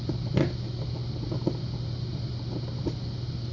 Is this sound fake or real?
real